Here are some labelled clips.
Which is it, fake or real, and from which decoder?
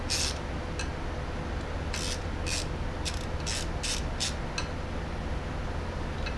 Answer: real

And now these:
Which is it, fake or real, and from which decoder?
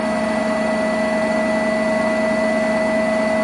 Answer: real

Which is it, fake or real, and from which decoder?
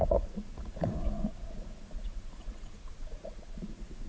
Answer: fake, vocoder, Vocos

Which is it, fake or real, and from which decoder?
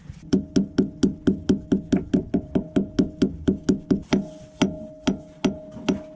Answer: real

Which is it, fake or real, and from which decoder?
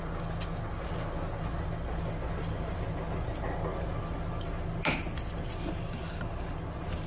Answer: real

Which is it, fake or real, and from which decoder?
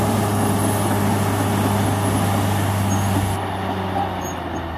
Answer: real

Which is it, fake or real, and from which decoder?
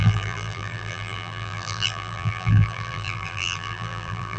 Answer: fake, vocoder, BigVGAN v2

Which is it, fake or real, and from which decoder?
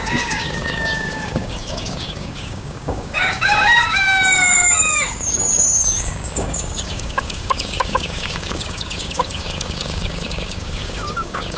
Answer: fake, codec, DAC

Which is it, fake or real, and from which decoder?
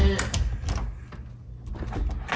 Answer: real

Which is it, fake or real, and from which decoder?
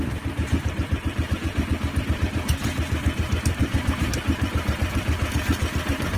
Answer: fake, vocoder, BigVGAN v2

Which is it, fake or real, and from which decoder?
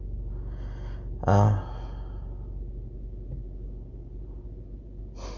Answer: real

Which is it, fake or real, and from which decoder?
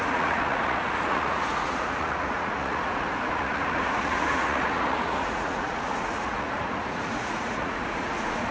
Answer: fake, vocoder, Vocos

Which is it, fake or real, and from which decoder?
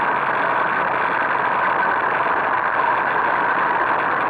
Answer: real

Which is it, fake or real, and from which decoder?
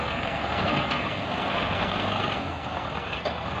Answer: fake, codec, SNAC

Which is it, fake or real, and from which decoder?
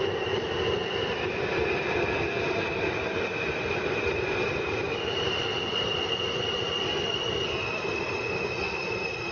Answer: real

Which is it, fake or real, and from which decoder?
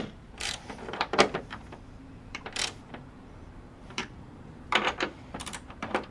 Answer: fake, vocoder, BigVGAN v2